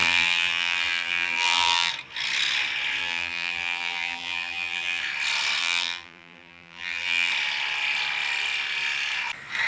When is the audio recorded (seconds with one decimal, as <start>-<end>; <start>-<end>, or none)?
1.9-3.0; 5.0-5.6; 7.3-9.7